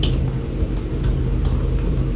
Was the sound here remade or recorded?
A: recorded